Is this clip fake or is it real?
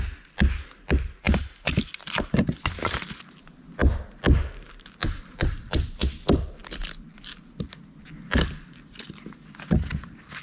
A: real